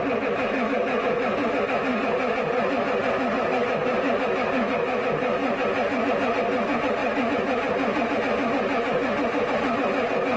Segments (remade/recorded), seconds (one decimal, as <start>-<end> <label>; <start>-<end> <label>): 0.0-7.0 recorded; 7.0-8.2 remade; 8.2-10.4 recorded